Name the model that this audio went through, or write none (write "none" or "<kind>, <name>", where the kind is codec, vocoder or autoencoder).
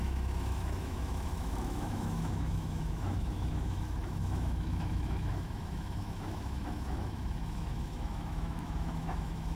autoencoder, DAC-VAE